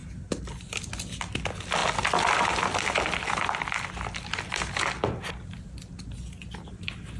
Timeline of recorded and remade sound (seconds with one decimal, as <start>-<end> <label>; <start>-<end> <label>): 0.0-7.2 recorded